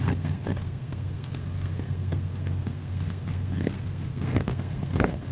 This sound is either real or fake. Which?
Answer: fake